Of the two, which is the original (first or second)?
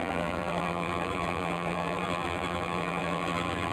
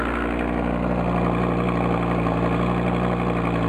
second